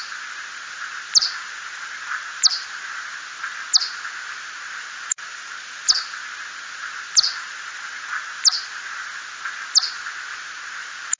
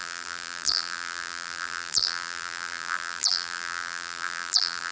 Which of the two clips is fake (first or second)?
second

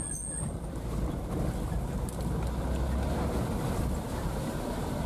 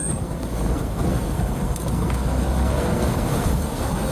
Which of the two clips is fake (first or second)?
second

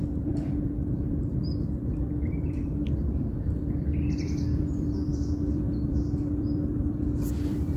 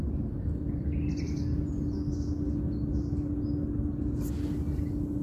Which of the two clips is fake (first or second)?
first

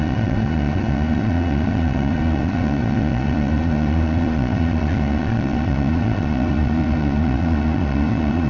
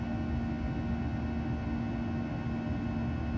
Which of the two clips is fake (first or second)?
first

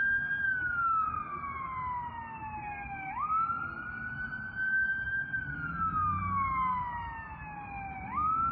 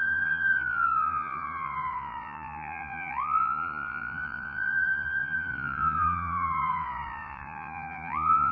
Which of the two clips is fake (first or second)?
second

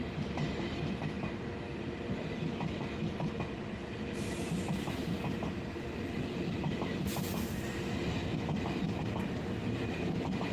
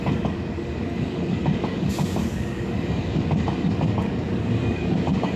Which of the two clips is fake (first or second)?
second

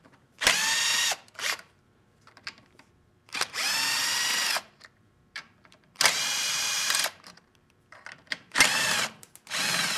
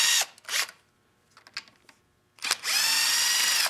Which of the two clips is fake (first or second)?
first